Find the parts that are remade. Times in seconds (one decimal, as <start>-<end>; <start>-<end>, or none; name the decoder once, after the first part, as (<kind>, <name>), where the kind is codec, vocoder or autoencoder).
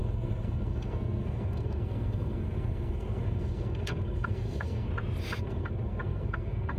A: 0.0-4.9 (codec, SNAC); 5.4-6.8